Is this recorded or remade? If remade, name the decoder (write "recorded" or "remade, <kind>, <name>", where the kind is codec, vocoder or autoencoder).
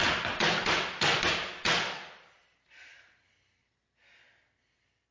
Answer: recorded